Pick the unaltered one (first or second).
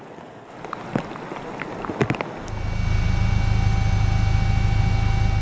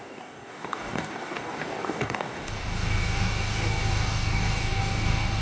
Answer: first